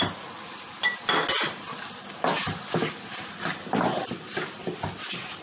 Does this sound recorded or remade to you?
recorded